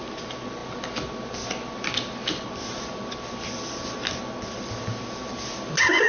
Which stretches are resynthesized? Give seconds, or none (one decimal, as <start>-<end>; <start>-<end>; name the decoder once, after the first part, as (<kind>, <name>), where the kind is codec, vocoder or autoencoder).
none